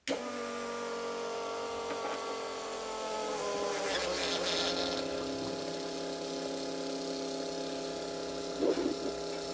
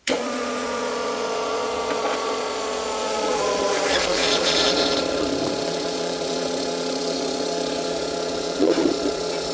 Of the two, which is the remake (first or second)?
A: second